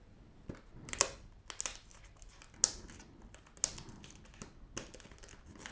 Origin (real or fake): real